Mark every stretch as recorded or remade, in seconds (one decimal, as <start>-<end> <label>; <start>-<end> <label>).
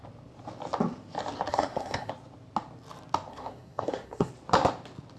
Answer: 0.0-1.5 recorded; 1.5-2.1 remade; 2.1-3.3 recorded; 3.3-4.3 remade; 4.3-5.2 recorded